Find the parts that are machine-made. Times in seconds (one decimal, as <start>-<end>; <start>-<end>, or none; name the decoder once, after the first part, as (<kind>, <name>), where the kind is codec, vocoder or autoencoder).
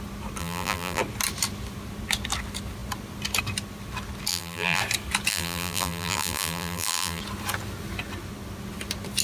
0.4-1.0 (vocoder, BigVGAN v2); 4.3-4.8; 5.3-7.2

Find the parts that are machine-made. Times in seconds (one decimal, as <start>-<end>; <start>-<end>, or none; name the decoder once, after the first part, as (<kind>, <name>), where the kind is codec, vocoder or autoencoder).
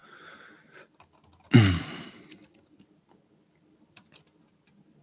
none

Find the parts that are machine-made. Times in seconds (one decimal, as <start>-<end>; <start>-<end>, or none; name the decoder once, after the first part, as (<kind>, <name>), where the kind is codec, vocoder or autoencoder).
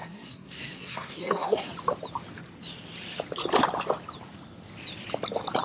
0.0-1.7 (codec, SNAC)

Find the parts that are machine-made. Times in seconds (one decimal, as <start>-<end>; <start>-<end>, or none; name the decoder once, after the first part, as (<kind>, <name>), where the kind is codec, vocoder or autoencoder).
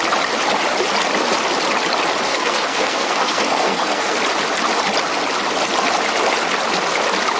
2.3-4.2 (codec, SNAC)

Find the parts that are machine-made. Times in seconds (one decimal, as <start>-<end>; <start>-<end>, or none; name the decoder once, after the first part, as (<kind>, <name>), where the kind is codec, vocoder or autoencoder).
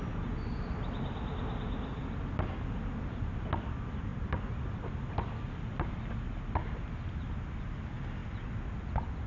4.1-4.9 (vocoder, BigVGAN v2)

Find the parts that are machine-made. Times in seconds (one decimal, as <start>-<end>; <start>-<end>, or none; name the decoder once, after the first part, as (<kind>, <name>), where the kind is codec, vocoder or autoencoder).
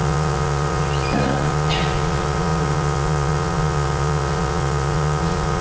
0.0-5.6 (vocoder, Vocos)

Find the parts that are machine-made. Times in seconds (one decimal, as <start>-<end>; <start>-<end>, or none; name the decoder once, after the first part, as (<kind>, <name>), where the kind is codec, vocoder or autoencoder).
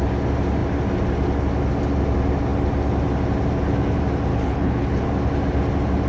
4.3-5.0 (codec, HILCodec)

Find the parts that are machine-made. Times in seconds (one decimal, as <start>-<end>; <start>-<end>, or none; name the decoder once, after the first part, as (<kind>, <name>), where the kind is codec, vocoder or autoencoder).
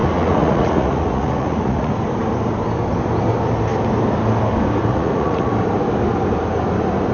0.0-1.9 (vocoder, Vocos); 4.9-5.5